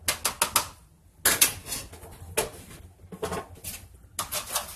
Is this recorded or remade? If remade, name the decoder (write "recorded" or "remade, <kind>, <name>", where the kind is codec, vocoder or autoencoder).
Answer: recorded